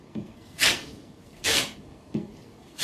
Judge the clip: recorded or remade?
remade